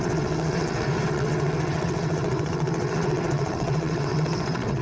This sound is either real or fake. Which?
fake